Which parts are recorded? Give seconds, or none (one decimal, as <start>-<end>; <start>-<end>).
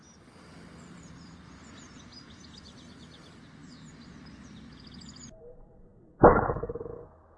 none